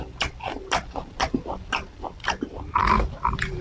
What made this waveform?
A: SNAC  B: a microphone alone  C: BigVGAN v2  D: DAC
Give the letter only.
B